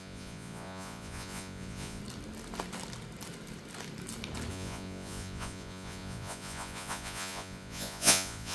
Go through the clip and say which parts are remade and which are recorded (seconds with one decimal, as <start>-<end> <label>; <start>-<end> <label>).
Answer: 0.0-2.0 remade; 2.0-4.5 recorded; 4.5-8.5 remade